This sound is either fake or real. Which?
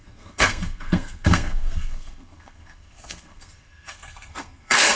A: fake